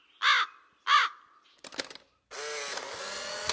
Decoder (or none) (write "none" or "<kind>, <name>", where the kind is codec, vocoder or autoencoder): none